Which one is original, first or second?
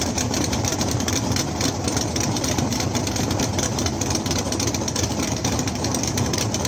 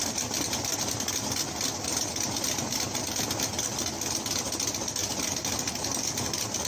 second